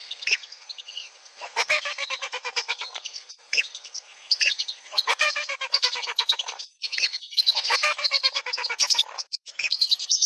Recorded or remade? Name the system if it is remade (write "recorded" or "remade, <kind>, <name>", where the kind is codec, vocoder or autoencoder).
remade, codec, SNAC